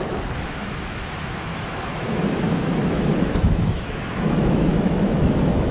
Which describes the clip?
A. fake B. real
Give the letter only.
A